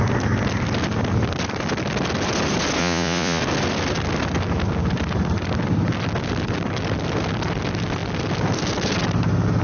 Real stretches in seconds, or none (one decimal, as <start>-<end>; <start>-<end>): 0.0-2.8; 3.4-9.6